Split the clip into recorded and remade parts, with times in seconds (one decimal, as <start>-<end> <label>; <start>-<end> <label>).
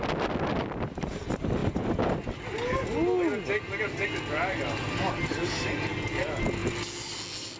0.0-7.6 recorded